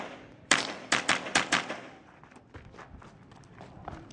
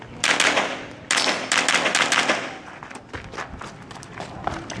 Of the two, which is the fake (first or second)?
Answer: first